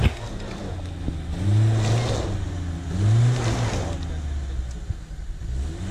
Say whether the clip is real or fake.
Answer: real